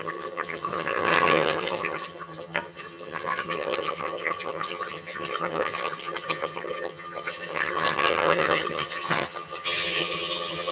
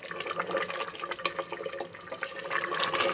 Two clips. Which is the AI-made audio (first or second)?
first